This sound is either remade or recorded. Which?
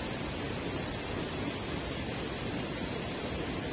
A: recorded